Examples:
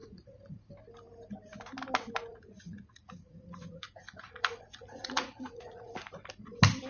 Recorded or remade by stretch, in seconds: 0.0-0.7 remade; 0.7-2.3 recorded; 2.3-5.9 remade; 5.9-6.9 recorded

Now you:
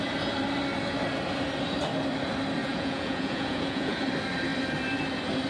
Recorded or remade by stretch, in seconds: 0.0-2.6 recorded; 2.6-4.0 remade; 4.0-5.5 recorded

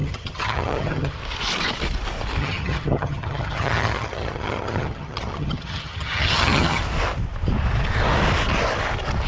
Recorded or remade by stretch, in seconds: 0.0-1.2 remade; 1.2-2.4 recorded; 2.4-6.8 remade; 6.8-9.3 recorded

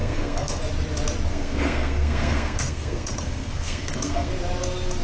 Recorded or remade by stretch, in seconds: 0.0-0.6 remade; 0.6-1.3 recorded; 1.3-4.3 remade; 4.3-5.0 recorded

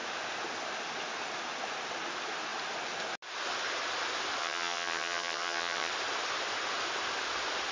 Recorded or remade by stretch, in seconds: 0.0-4.4 recorded; 4.4-5.9 remade; 5.9-7.7 recorded

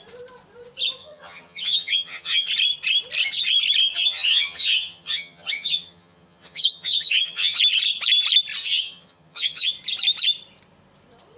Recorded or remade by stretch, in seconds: 0.0-1.0 recorded; 1.0-2.5 remade; 2.5-3.9 recorded; 3.9-7.6 remade; 7.6-8.6 recorded; 8.6-9.7 remade; 9.7-11.4 recorded